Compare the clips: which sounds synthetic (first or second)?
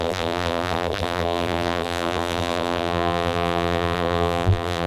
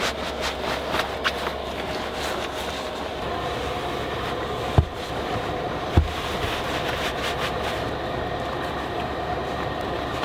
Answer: first